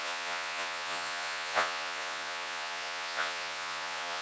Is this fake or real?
fake